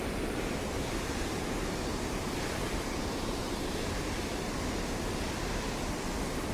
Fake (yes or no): no